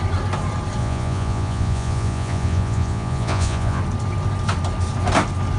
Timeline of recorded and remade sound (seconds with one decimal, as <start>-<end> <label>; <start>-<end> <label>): 0.0-0.8 recorded; 0.8-3.8 remade; 3.8-5.6 recorded